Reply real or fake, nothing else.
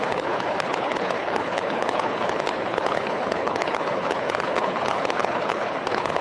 fake